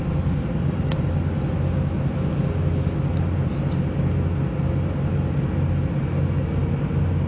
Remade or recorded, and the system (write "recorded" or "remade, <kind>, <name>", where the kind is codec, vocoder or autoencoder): recorded